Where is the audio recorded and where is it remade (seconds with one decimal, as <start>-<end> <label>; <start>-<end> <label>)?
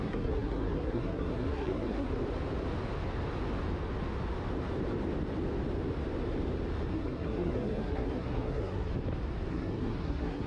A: 0.0-2.1 remade; 2.1-6.9 recorded; 6.9-8.9 remade; 8.9-9.5 recorded; 9.5-10.5 remade